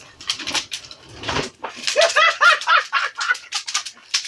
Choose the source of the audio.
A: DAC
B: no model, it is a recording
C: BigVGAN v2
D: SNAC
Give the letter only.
C